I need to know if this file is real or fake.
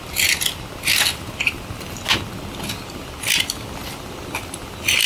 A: real